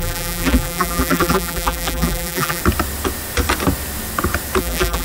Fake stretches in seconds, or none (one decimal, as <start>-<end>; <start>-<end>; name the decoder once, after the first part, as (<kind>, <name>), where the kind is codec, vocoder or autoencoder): 0.0-2.6 (vocoder, BigVGAN v2); 4.6-5.0